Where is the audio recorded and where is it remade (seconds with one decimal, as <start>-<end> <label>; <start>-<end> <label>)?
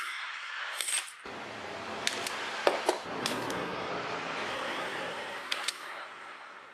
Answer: 0.0-0.9 remade; 0.9-3.2 recorded; 3.2-3.9 remade; 3.9-4.5 recorded; 4.5-6.7 remade